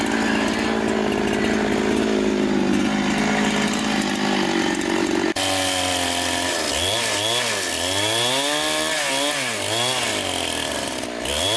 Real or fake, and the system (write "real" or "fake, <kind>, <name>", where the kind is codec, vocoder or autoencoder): real